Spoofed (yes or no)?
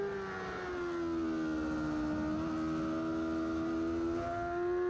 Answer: no